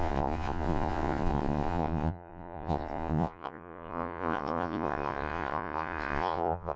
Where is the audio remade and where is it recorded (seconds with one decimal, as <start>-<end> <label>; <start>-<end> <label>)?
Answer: 0.0-6.8 remade